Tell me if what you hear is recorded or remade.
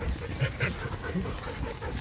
recorded